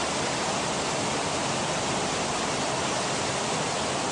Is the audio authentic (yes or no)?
yes